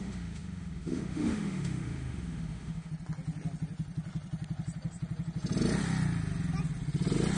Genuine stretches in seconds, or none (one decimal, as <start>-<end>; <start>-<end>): 2.9-7.4